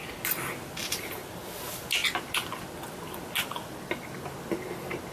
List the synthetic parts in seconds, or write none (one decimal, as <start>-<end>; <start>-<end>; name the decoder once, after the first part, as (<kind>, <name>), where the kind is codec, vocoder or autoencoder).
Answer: 0.8-1.3 (vocoder, BigVGAN v2)

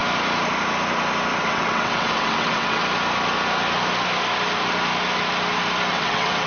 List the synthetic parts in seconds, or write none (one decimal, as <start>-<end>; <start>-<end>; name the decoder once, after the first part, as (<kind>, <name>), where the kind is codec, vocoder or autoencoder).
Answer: 1.4-2.8 (vocoder, WaveNeXt); 5.9-6.5

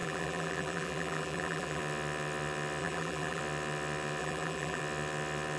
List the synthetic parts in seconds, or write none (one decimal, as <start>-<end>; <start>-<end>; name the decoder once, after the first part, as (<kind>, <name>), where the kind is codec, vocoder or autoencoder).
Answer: 0.0-1.8 (vocoder, BigVGAN v2); 2.8-3.4; 4.2-4.8

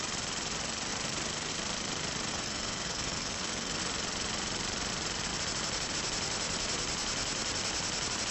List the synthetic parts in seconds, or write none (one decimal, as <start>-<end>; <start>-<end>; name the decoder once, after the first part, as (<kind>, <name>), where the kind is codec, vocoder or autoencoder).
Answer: 2.3-3.8 (codec, SNAC)

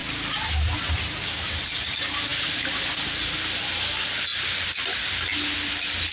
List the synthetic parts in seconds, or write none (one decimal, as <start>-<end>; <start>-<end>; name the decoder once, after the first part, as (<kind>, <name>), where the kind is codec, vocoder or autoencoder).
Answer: none

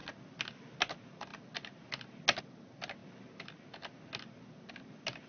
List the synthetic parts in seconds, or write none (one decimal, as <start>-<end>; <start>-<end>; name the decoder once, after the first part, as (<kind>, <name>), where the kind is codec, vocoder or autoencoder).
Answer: none